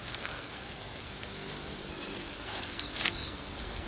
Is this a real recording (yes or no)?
no